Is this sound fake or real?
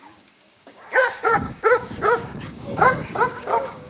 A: fake